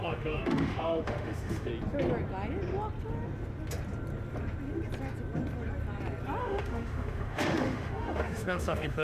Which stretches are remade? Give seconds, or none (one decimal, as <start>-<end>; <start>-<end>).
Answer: 0.0-1.7; 6.4-9.0